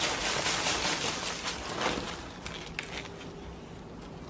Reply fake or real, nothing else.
real